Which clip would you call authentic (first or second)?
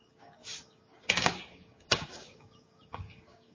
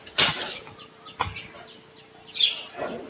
second